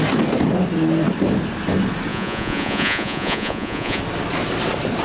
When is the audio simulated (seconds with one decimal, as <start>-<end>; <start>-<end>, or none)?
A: 2.1-4.0